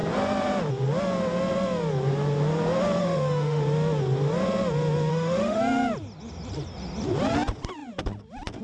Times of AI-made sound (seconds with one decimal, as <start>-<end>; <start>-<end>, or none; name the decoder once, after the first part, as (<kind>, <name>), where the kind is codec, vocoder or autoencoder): 3.0-3.6 (autoencoder, DAC-VAE); 5.1-5.6